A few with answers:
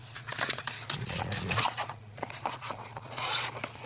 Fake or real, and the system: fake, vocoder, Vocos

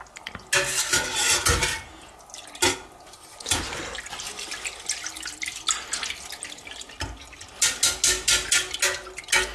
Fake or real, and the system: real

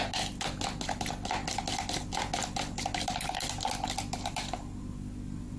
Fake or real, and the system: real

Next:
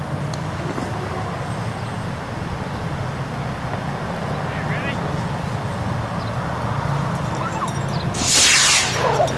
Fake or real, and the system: real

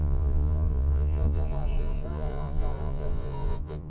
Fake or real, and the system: fake, vocoder, Vocos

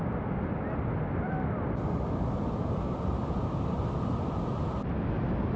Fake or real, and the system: real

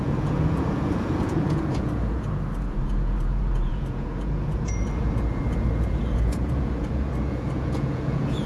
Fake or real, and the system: fake, vocoder, Vocos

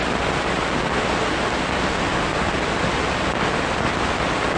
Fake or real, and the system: real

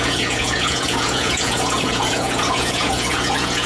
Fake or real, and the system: fake, vocoder, Vocos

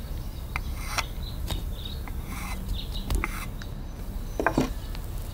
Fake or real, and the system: real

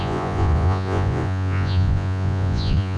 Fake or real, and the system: fake, vocoder, Vocos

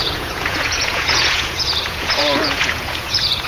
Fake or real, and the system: fake, vocoder, Vocos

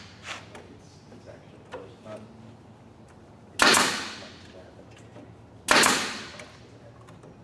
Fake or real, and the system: real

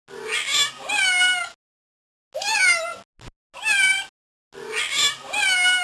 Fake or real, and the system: real